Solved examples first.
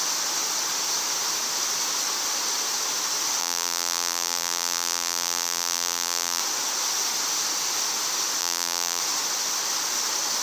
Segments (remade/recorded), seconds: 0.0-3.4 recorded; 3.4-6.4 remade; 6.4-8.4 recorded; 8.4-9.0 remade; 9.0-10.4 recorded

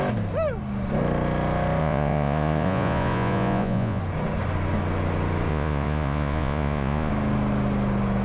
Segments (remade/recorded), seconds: 0.0-1.8 recorded; 1.8-4.0 remade; 4.0-5.5 recorded; 5.5-7.1 remade; 7.1-8.2 recorded

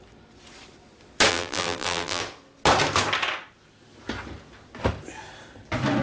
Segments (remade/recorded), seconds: 0.0-1.3 recorded; 1.3-2.2 remade; 2.2-6.0 recorded

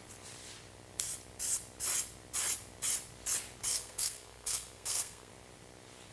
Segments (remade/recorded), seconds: 0.0-3.7 recorded; 3.7-5.3 remade; 5.3-6.1 recorded

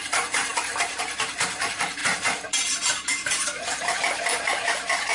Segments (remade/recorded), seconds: 0.0-5.1 remade